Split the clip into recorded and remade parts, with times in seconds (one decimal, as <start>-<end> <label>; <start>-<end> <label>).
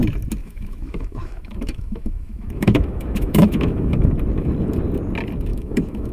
0.0-0.4 recorded; 0.4-4.1 remade; 4.1-5.5 recorded; 5.5-6.1 remade